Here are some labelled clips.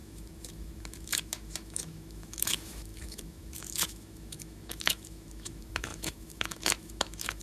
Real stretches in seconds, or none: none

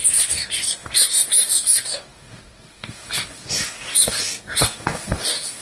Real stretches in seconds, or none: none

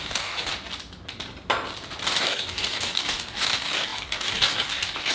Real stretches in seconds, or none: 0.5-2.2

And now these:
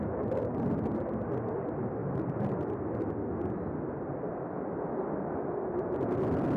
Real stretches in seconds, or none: 0.0-6.6